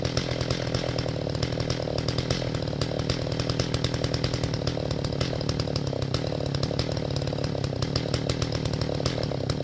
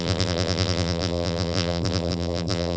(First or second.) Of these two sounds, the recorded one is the first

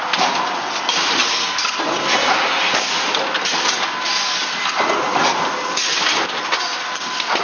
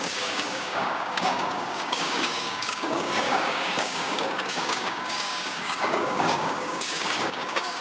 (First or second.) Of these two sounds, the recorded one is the first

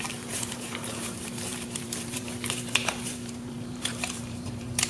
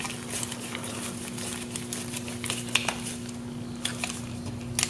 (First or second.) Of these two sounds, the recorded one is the second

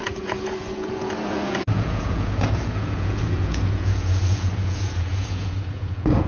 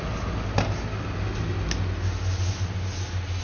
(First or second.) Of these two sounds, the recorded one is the second